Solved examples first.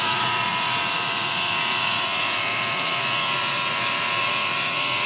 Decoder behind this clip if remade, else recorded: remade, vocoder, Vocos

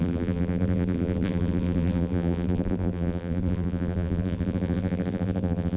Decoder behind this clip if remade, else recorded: remade, vocoder, BigVGAN v2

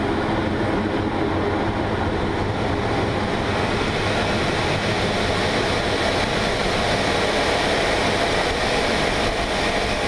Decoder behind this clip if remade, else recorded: recorded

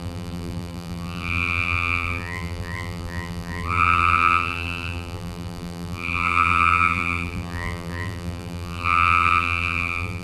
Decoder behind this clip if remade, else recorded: remade, vocoder, BigVGAN v2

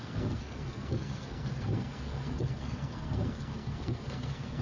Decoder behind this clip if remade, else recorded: remade, codec, SNAC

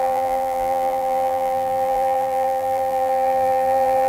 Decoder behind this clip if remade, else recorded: remade, vocoder, BigVGAN v2